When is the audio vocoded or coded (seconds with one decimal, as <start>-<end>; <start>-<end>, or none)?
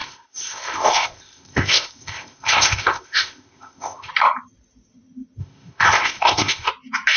0.0-4.1; 5.4-6.7